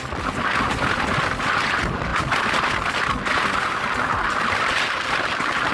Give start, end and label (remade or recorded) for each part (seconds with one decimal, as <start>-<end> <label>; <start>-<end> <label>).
0.0-5.7 recorded